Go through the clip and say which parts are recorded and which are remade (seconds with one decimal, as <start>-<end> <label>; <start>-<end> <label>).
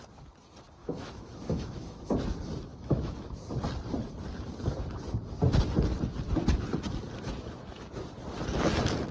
0.0-0.8 recorded; 0.8-2.1 remade; 2.1-2.7 recorded; 2.7-3.3 remade; 3.3-9.1 recorded